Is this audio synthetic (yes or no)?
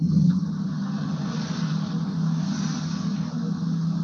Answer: no